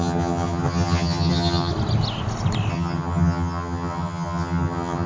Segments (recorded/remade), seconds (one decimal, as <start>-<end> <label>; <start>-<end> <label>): 0.0-1.7 remade; 1.7-2.7 recorded; 2.7-5.1 remade